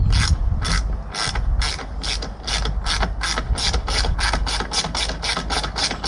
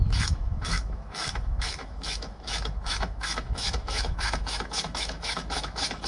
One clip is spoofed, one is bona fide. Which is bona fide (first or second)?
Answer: first